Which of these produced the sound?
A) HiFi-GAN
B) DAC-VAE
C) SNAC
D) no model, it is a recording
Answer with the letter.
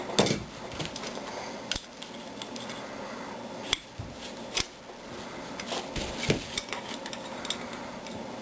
D